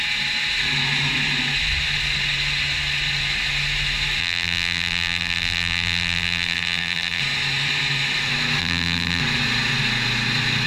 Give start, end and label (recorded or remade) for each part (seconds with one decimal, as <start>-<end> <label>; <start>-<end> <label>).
0.0-4.2 recorded; 4.2-7.2 remade; 7.2-8.6 recorded; 8.6-9.2 remade; 9.2-10.7 recorded